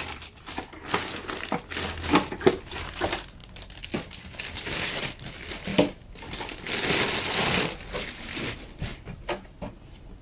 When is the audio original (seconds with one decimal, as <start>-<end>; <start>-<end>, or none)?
0.0-10.2